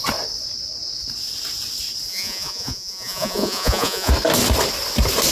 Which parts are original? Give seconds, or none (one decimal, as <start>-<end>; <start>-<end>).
0.0-2.1; 4.1-5.3